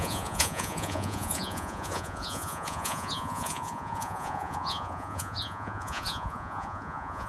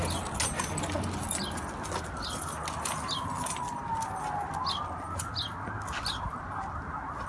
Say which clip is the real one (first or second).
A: second